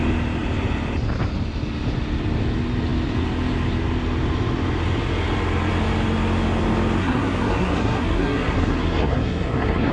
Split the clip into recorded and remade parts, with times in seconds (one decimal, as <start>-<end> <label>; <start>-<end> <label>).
0.0-7.0 recorded; 7.0-9.9 remade